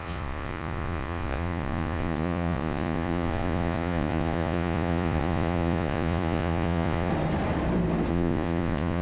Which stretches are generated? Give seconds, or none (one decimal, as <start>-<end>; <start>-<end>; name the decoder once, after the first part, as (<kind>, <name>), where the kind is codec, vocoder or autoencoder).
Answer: 0.0-7.1 (vocoder, Vocos); 8.1-9.0

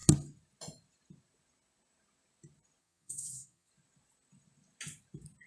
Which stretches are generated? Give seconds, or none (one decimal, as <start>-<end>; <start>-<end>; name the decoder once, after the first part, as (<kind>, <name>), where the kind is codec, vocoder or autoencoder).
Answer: 2.8-3.7 (vocoder, Vocos)

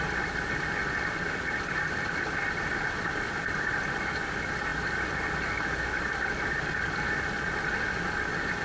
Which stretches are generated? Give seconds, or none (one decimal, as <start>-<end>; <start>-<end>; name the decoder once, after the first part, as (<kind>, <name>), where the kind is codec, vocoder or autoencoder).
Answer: none